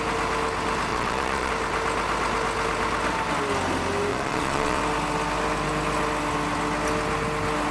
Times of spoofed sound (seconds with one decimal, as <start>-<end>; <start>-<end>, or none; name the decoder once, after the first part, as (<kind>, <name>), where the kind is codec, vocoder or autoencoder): 0.9-1.5 (vocoder, Vocos); 4.1-4.8